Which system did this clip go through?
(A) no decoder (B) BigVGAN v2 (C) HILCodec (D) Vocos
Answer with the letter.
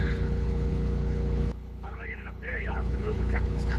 C